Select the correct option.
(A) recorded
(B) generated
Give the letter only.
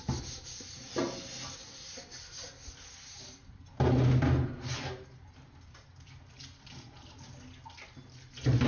A